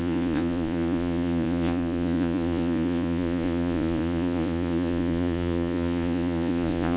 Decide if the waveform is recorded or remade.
remade